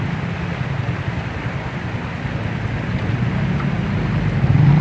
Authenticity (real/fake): real